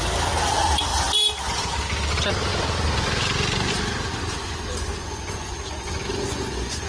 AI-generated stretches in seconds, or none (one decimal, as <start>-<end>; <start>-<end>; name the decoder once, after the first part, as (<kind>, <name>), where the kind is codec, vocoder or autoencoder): 4.4-6.9 (vocoder, Vocos)